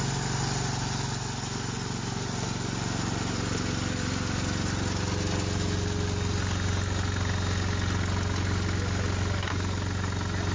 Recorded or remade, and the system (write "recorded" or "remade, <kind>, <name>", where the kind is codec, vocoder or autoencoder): recorded